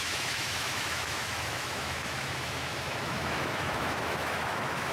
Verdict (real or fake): fake